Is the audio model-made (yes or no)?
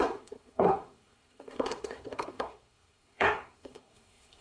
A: yes